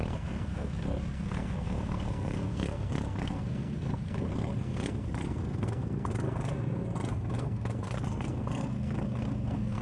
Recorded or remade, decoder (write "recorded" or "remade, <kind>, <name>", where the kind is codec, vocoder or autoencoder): remade, codec, SNAC